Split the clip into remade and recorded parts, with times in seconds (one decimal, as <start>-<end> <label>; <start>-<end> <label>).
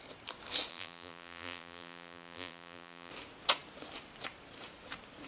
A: 0.0-0.7 recorded; 0.7-3.1 remade; 3.1-5.3 recorded